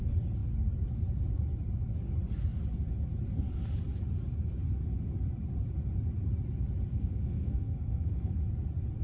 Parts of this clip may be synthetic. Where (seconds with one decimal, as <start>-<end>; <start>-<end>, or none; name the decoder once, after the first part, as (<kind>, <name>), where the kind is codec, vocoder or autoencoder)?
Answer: 6.9-8.4 (codec, SNAC)